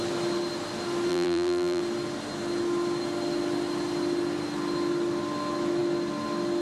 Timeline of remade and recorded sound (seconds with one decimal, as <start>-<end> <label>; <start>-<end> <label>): 0.0-1.1 recorded; 1.1-1.8 remade; 1.8-6.6 recorded